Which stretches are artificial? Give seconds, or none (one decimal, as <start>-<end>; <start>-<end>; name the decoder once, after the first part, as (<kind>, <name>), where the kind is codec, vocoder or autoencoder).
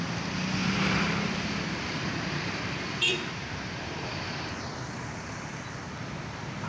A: 0.6-4.6 (vocoder, BigVGAN v2)